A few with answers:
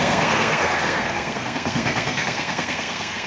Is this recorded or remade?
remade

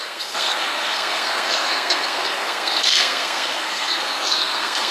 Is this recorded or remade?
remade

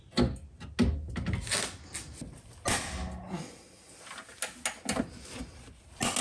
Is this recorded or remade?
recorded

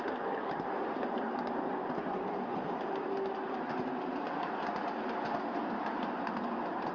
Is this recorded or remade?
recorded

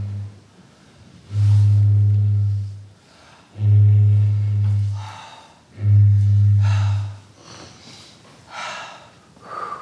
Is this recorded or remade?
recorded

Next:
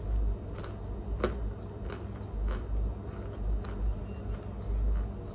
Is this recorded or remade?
recorded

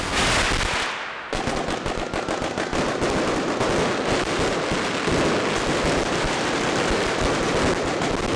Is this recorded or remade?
recorded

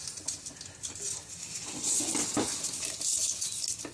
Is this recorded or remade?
recorded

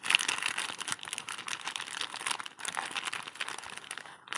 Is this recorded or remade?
recorded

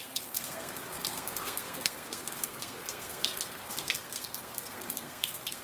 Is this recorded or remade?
remade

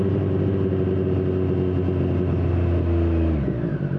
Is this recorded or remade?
recorded